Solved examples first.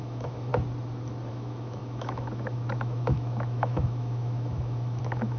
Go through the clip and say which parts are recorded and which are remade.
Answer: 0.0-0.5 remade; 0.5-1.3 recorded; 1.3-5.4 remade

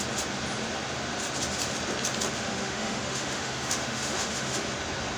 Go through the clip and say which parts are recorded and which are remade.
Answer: 0.0-2.4 recorded; 2.4-4.7 remade; 4.7-5.2 recorded

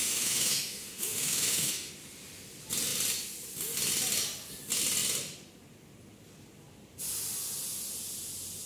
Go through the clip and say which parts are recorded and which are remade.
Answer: 0.0-1.9 remade; 1.9-8.7 recorded

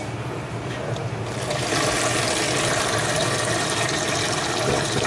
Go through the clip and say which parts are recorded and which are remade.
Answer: 0.0-5.1 recorded

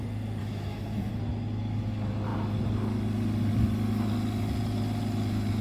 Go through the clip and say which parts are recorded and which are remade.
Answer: 0.0-0.4 recorded; 0.4-1.1 remade; 1.1-5.6 recorded

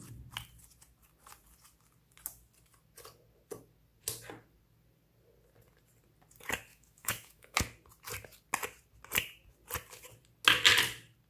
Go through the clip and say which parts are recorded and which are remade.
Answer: 0.0-6.7 recorded; 6.7-7.6 remade; 7.6-11.3 recorded

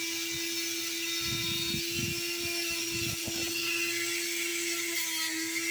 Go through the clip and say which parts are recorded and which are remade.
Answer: 0.0-5.7 recorded

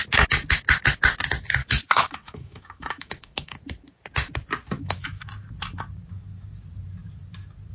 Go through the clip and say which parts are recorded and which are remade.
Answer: 0.0-1.6 recorded; 1.6-3.6 remade; 3.6-4.8 recorded; 4.8-5.3 remade; 5.3-7.7 recorded